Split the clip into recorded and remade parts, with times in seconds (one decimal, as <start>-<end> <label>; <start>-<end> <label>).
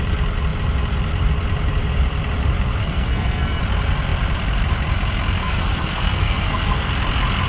0.0-2.8 recorded; 2.8-3.6 remade; 3.6-5.4 recorded; 5.4-6.9 remade; 6.9-7.5 recorded